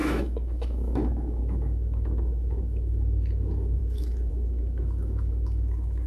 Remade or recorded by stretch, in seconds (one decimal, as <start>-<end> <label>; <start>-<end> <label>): 0.0-6.1 remade